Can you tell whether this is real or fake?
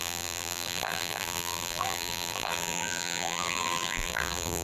fake